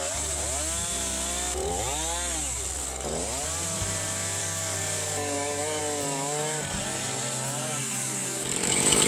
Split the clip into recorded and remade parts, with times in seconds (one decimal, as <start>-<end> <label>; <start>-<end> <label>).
0.0-4.4 recorded; 4.4-5.8 remade; 5.8-7.6 recorded; 7.6-9.1 remade